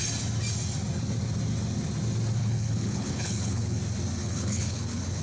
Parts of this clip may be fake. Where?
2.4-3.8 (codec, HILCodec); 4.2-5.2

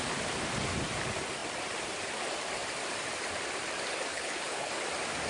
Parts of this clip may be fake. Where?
4.1-4.7 (codec, HILCodec)

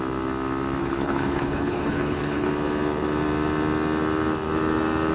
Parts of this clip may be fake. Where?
0.8-2.5 (codec, HILCodec)

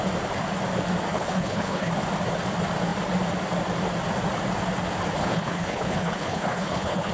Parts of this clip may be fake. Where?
1.1-1.9 (codec, HILCodec); 5.2-7.1